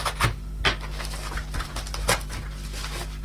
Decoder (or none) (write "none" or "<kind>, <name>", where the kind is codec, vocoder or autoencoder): none